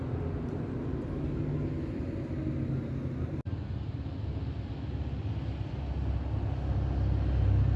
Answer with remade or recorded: recorded